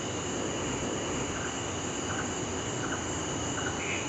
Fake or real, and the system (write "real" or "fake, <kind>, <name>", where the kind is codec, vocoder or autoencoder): real